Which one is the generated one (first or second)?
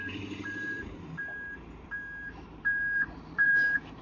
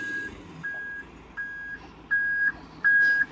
first